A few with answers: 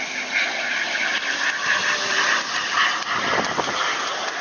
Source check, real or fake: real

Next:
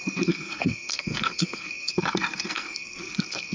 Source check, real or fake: fake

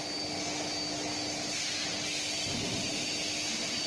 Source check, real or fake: real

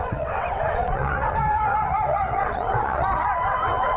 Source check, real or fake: fake